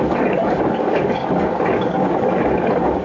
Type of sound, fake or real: fake